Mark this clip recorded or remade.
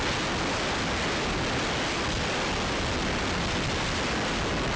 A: recorded